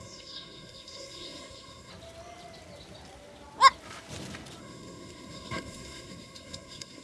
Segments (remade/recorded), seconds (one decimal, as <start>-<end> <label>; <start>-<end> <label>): 0.0-1.9 remade; 1.9-4.6 recorded; 4.6-7.0 remade